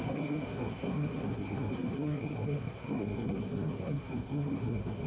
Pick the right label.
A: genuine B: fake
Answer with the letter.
B